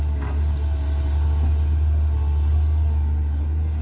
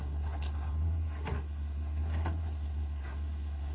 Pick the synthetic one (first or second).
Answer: second